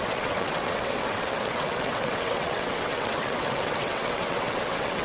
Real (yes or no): no